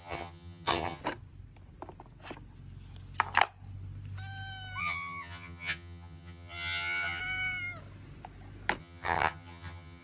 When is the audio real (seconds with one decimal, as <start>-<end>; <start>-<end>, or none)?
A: 1.0-4.8; 7.2-8.8